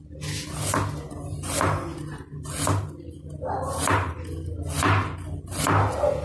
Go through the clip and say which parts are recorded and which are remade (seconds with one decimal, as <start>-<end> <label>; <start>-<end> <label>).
0.0-6.2 recorded